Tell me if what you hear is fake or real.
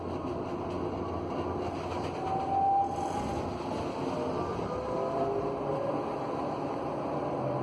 real